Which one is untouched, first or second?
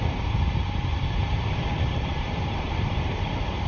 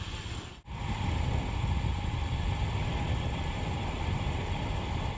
second